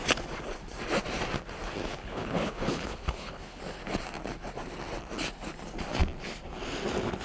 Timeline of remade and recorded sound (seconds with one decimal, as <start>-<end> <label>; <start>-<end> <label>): 0.0-2.0 recorded; 2.0-3.6 remade; 3.6-7.2 recorded